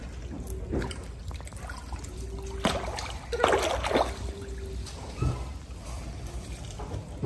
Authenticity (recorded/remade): recorded